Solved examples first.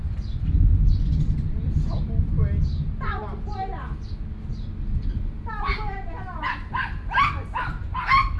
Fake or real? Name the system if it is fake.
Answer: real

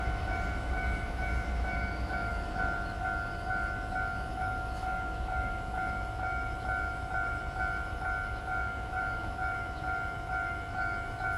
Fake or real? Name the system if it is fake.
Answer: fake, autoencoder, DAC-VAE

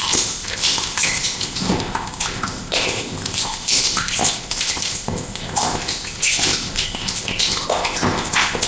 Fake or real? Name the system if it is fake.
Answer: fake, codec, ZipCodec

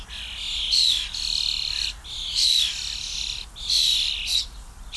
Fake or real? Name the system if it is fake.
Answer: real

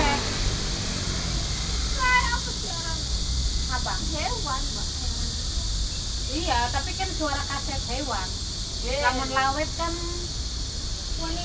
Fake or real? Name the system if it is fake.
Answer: real